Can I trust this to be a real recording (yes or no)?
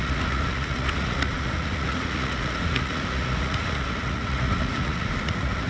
no